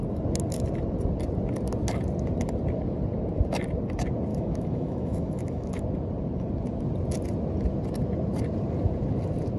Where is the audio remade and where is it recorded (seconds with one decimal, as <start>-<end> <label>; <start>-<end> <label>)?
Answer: 0.0-4.3 recorded; 4.3-5.8 remade; 5.8-9.6 recorded